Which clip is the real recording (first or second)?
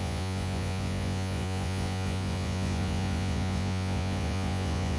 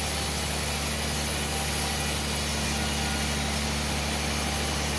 second